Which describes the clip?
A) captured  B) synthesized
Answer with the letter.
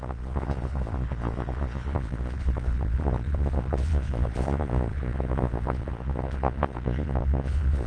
B